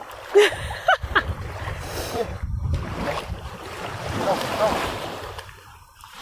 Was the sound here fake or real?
fake